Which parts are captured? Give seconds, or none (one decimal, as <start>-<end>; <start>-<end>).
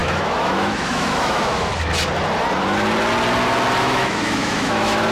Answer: 1.7-3.8